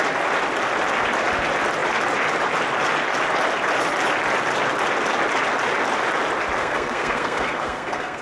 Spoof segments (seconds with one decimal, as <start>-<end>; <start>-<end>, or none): 6.6-8.2